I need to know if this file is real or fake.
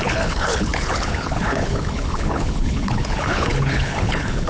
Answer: fake